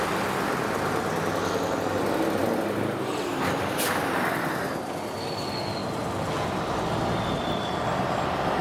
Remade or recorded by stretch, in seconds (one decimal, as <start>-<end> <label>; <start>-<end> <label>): 0.0-8.6 recorded